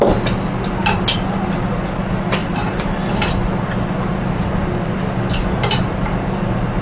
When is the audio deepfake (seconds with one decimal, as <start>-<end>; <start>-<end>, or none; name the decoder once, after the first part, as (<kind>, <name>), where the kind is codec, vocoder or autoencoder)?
none